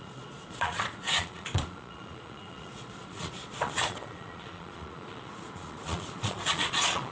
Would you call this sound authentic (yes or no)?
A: no